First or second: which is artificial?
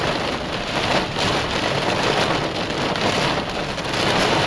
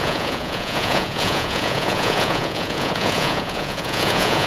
second